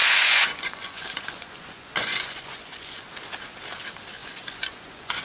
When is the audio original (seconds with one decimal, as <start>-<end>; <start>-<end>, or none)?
3.1-4.2

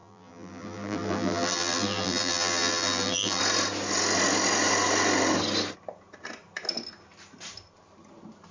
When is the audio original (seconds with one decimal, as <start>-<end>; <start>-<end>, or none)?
3.4-8.5